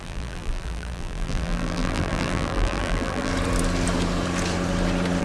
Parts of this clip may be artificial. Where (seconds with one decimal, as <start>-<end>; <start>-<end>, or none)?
0.0-3.3